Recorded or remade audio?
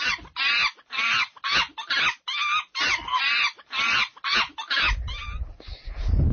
recorded